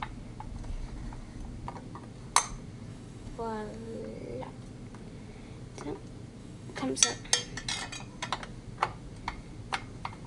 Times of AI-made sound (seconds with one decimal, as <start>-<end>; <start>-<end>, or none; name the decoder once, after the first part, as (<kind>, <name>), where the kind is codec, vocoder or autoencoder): 2.9-4.0 (autoencoder, DAC-VAE); 6.4-7.0